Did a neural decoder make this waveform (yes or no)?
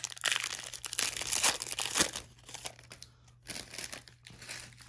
no